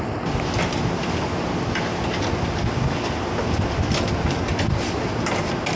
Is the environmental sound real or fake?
real